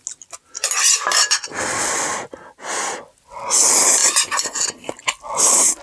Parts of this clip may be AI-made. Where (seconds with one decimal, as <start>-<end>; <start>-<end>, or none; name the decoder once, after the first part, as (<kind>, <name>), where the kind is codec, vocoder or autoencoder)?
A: none

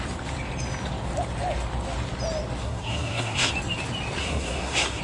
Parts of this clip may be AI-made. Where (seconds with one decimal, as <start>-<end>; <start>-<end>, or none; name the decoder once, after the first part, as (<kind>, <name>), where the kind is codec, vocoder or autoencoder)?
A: 2.6-3.5 (codec, SNAC); 4.2-5.0

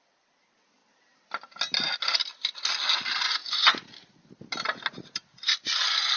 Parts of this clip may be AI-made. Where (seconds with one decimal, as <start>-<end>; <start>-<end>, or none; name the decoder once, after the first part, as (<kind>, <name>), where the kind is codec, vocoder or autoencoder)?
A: none

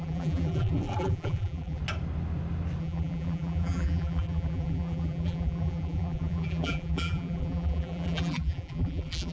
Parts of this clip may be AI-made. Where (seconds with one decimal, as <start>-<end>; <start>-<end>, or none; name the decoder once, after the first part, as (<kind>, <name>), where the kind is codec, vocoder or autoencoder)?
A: 0.0-1.8 (vocoder, BigVGAN v2); 2.8-9.3

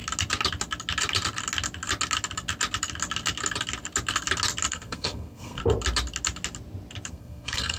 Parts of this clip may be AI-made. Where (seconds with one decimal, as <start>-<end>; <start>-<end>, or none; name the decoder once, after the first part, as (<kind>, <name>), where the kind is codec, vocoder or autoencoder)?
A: 4.7-5.6 (codec, SNAC); 7.1-7.8

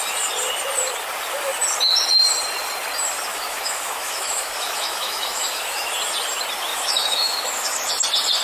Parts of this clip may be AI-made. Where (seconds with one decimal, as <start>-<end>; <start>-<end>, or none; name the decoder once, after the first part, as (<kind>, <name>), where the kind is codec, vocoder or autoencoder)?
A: 3.3-5.9 (autoencoder, DAC-VAE); 6.7-7.9

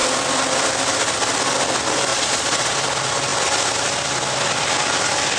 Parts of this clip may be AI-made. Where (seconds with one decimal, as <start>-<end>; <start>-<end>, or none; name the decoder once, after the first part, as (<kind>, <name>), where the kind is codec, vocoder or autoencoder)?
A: 2.1-2.7 (vocoder, Vocos)

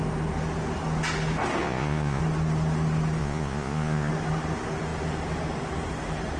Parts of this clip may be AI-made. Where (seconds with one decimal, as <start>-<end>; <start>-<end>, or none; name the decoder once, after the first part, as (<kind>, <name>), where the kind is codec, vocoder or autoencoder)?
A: 1.6-2.2 (vocoder, Vocos); 3.2-4.1